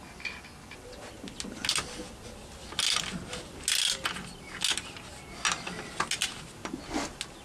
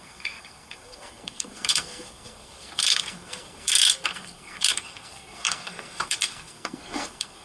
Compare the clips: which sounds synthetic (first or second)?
second